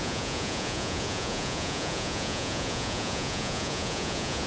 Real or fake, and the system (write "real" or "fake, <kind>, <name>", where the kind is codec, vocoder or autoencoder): fake, vocoder, Vocos